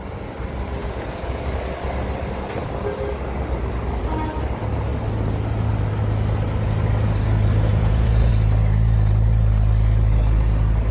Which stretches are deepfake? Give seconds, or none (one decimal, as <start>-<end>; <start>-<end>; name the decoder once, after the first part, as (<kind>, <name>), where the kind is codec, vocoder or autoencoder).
0.8-1.4 (vocoder, Vocos); 7.7-8.3